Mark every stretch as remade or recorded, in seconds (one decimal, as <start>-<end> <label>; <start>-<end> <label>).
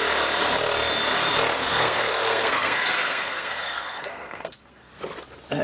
0.0-1.6 recorded; 1.6-5.0 remade; 5.0-5.6 recorded